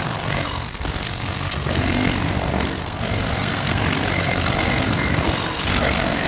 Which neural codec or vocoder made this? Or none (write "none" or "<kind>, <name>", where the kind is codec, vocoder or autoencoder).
codec, SNAC